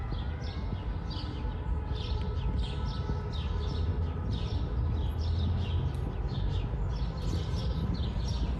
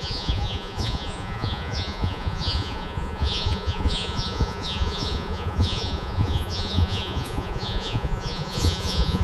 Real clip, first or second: first